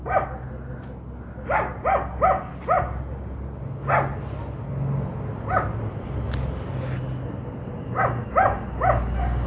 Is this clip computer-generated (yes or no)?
no